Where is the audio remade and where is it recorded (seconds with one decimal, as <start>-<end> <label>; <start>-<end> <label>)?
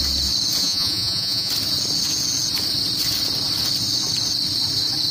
0.0-0.6 recorded; 0.6-1.5 remade; 1.5-5.1 recorded